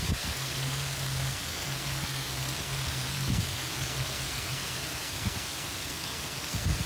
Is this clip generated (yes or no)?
yes